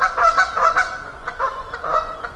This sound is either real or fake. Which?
fake